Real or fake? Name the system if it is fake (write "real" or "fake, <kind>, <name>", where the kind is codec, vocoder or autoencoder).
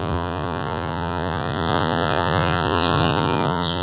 fake, vocoder, Vocos